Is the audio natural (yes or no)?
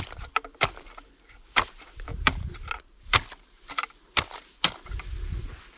no